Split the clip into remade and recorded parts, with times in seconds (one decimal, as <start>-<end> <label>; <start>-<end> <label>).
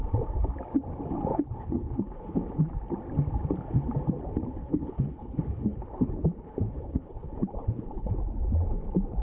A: 0.0-1.3 recorded; 1.3-2.7 remade; 2.7-4.6 recorded; 4.6-8.1 remade; 8.1-9.2 recorded